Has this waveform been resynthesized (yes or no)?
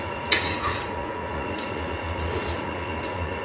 yes